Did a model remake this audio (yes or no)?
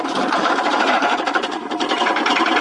yes